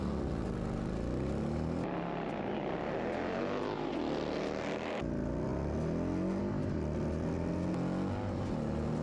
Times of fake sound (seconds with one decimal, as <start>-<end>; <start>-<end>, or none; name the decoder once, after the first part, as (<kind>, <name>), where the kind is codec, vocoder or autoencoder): none